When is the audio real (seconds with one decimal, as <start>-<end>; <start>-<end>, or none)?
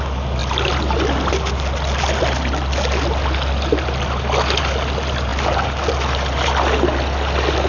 0.0-7.7